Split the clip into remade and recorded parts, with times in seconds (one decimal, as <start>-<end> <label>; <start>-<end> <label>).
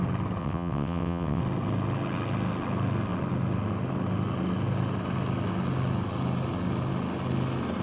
0.0-0.4 recorded; 0.4-1.4 remade; 1.4-7.8 recorded